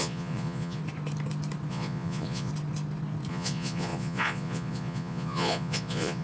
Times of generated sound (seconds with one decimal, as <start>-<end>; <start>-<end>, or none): 0.0-0.8; 1.7-2.5; 3.3-6.2

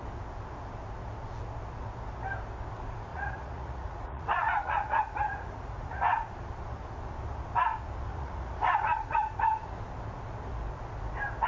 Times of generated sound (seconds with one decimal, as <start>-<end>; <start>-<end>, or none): 3.1-6.3; 8.1-9.8

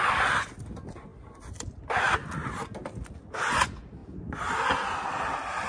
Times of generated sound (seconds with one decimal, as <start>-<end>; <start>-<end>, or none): none

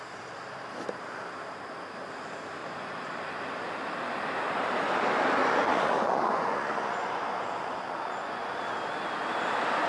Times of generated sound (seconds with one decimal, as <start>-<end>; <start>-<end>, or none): 2.6-3.1; 5.4-8.6

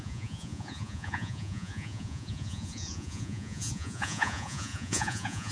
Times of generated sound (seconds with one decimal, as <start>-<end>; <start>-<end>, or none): 0.0-5.5

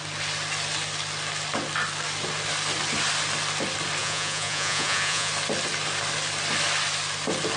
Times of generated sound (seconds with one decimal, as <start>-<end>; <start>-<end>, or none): 4.0-5.3